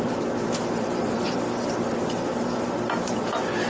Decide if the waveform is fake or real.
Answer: fake